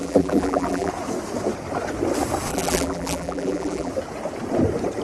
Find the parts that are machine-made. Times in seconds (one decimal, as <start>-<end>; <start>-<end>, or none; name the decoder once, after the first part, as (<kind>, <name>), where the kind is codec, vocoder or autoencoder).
0.0-0.9 (vocoder, BigVGAN v2); 2.5-3.9